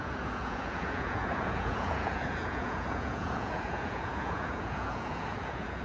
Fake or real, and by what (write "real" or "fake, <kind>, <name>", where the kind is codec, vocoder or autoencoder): fake, vocoder, Vocos